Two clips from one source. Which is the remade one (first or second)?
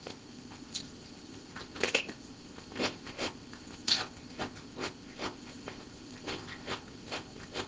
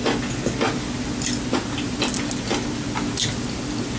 first